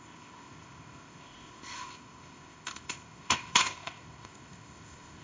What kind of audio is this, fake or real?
fake